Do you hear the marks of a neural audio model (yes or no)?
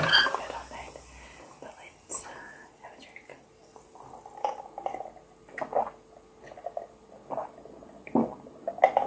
no